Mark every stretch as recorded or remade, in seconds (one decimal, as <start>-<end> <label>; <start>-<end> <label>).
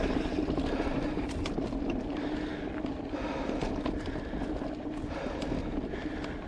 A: 0.0-2.5 remade; 2.5-6.5 recorded